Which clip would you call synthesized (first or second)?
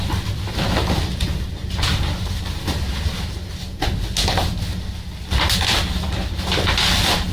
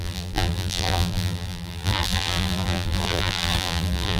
second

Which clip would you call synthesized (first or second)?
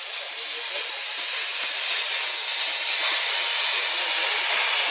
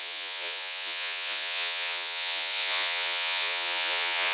second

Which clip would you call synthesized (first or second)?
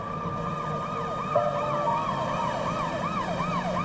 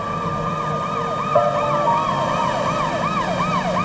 first